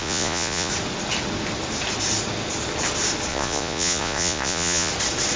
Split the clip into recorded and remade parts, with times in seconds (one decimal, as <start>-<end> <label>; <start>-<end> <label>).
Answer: 0.0-0.7 remade; 0.7-3.3 recorded; 3.3-4.9 remade; 4.9-5.4 recorded